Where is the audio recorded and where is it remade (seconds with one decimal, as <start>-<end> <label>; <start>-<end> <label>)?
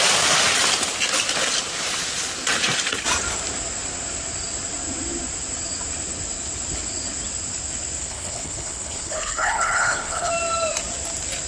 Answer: 0.0-8.0 recorded; 8.0-10.3 remade; 10.3-11.5 recorded